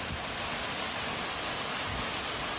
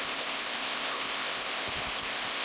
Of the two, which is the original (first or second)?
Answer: first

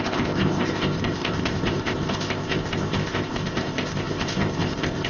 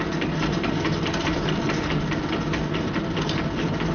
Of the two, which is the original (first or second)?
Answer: second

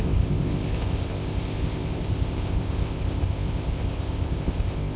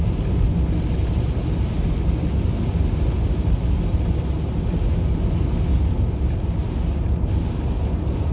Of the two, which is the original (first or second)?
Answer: second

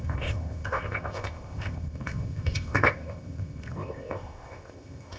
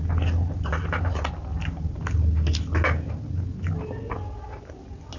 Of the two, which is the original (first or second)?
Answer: second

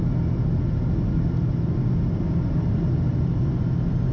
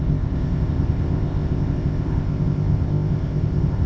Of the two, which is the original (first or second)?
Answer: first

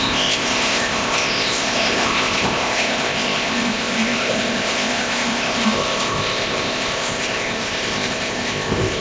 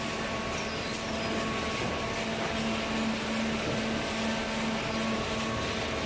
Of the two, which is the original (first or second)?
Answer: second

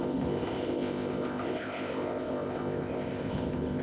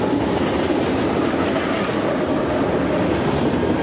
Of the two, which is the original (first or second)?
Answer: second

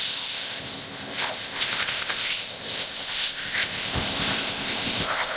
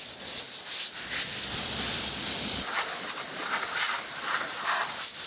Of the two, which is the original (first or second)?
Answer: second